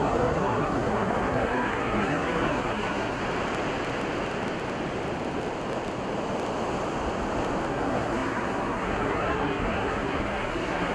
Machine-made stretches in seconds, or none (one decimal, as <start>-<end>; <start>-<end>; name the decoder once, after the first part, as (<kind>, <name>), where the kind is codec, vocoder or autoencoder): 0.0-3.2 (codec, SNAC); 7.7-10.9